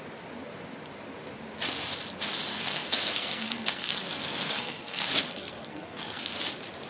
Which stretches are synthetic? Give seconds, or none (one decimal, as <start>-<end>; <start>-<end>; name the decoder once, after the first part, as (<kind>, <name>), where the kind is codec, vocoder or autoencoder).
2.5-6.4 (codec, SNAC)